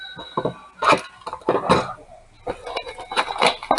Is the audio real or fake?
real